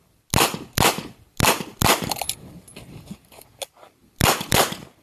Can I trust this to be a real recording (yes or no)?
yes